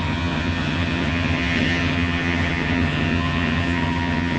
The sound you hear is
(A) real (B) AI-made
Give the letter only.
B